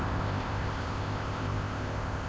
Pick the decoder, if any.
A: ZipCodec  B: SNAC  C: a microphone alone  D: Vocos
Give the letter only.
A